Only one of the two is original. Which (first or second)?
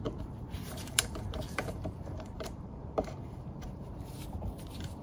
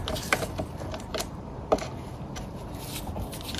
second